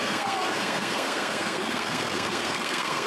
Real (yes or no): no